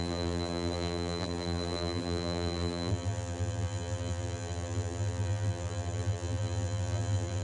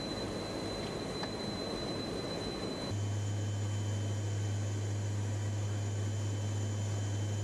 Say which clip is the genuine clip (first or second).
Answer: second